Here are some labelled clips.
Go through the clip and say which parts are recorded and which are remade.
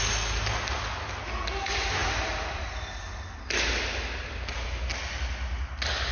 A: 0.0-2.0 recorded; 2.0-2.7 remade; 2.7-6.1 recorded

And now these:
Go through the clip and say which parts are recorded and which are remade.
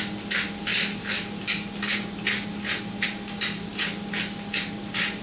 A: 0.0-5.2 recorded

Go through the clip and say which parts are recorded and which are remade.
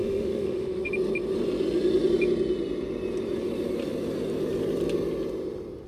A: 0.0-0.9 remade; 0.9-5.9 recorded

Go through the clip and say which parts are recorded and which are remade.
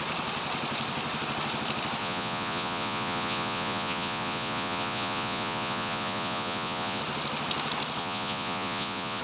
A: 0.0-2.0 recorded; 2.0-7.0 remade; 7.0-8.0 recorded; 8.0-9.2 remade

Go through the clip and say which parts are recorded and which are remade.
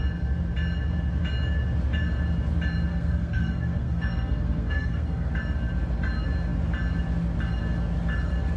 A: 0.0-2.9 recorded; 2.9-5.3 remade; 5.3-8.6 recorded